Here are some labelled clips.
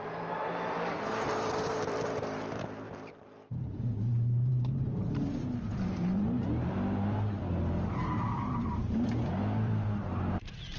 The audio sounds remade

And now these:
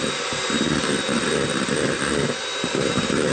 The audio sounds recorded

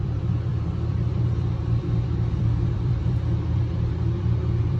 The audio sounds remade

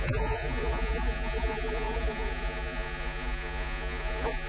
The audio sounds remade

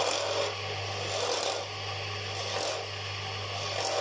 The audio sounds recorded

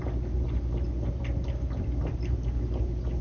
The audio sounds recorded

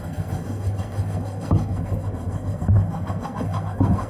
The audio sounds remade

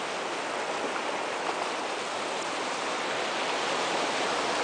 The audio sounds recorded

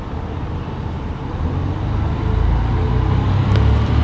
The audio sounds recorded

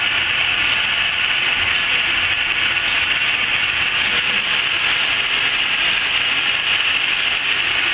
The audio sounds recorded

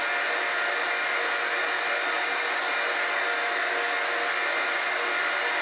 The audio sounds recorded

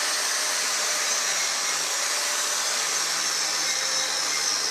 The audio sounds recorded